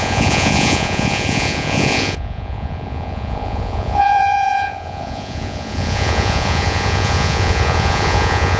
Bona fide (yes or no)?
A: no